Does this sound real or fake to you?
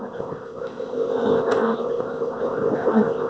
fake